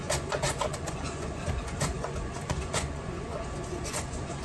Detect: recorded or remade remade